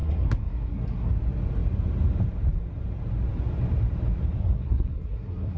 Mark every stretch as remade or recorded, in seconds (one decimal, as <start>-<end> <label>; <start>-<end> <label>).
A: 0.0-1.1 remade; 1.1-4.4 recorded; 4.4-5.6 remade